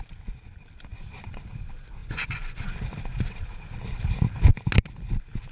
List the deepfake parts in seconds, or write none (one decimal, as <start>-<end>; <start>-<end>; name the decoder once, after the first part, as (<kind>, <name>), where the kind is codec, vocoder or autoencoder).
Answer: 2.0-2.7 (vocoder, Vocos)